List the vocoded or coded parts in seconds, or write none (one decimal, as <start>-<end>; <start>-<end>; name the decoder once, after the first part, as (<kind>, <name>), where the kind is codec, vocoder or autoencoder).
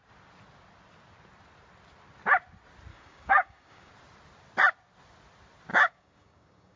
2.9-3.9 (codec, DAC); 5.7-6.8